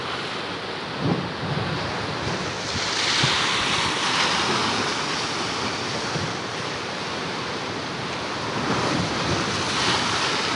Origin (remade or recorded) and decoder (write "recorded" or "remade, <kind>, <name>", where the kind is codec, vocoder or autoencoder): recorded